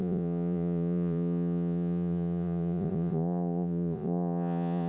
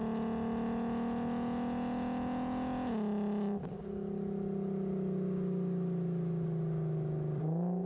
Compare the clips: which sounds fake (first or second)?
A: first